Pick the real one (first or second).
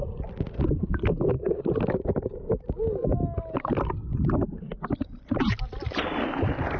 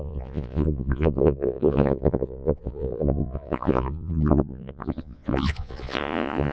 first